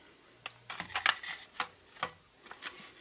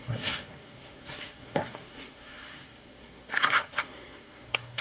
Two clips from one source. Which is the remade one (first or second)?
second